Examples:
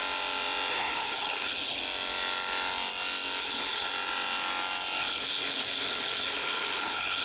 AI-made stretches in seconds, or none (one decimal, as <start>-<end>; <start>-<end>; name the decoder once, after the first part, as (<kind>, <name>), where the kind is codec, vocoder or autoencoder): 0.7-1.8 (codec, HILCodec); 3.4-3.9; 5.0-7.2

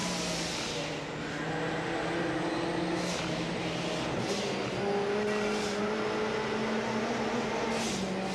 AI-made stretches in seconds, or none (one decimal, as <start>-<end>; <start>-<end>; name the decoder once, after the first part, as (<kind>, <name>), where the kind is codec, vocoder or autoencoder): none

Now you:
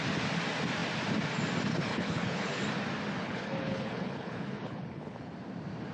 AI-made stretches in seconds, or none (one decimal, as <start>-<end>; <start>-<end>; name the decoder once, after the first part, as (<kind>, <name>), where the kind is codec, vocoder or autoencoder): 1.9-2.6 (codec, HILCodec); 3.2-5.3

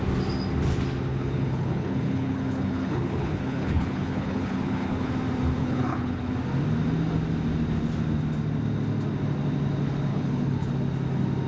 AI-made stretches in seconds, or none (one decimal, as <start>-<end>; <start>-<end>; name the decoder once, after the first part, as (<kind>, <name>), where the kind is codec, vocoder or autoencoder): 1.1-5.1 (codec, HILCodec); 5.6-6.3; 10.1-10.7